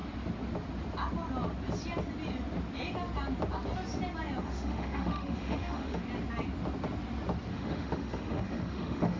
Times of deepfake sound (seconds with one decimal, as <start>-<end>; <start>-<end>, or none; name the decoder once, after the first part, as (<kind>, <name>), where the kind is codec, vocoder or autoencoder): 4.4-6.0 (autoencoder, DAC-VAE); 7.5-9.2